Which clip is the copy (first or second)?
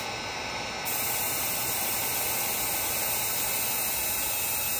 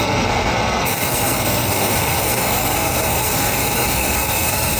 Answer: second